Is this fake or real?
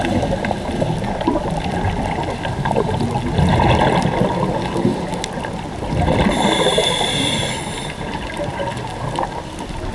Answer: real